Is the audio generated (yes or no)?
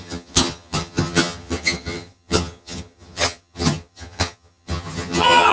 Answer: yes